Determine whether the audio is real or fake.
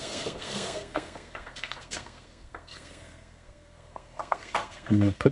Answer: fake